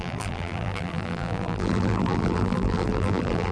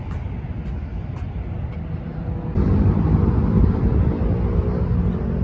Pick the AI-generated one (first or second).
first